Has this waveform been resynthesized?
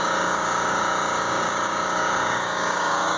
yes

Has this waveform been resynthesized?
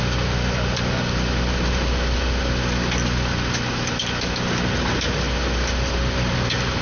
no